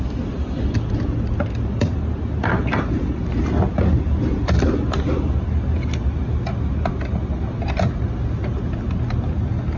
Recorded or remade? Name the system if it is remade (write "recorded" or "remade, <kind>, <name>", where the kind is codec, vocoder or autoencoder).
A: recorded